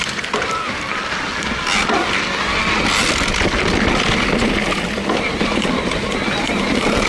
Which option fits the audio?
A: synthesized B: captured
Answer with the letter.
B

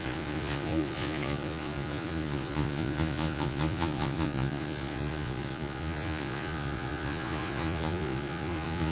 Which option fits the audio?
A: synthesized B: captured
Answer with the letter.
A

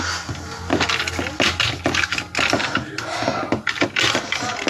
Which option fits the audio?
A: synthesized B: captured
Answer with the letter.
B